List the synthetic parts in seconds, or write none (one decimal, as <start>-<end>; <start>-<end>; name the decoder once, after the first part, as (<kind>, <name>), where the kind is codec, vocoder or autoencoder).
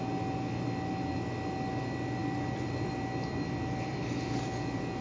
2.2-2.9 (vocoder, BigVGAN v2); 3.3-4.2